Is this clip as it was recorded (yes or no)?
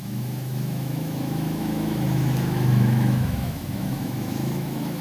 no